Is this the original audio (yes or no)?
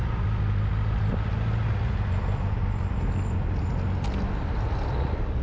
yes